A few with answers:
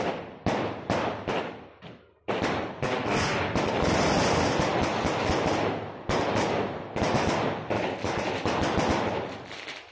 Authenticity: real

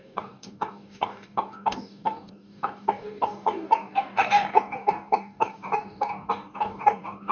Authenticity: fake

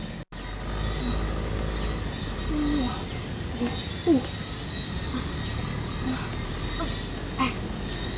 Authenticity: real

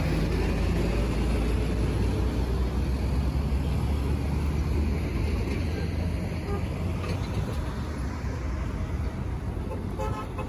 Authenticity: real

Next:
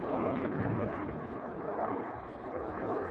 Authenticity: fake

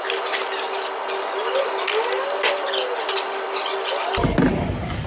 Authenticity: real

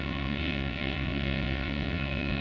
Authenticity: fake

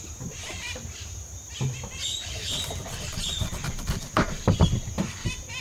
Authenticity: fake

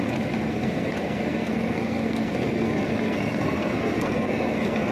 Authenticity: fake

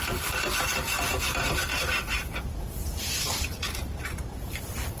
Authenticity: fake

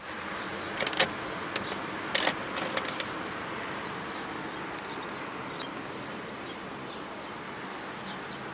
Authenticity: real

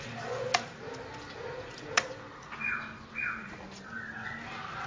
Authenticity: real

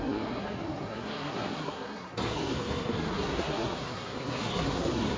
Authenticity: fake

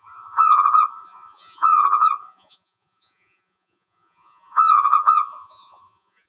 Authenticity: fake